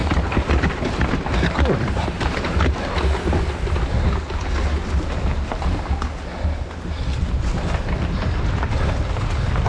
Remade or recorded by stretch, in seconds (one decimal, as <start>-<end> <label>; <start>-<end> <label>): 0.0-2.9 remade; 2.9-9.7 recorded